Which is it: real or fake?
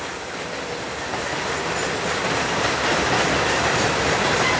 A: real